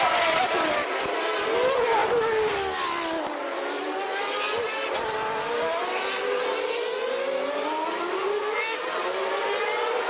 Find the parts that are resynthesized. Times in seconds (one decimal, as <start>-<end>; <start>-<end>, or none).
none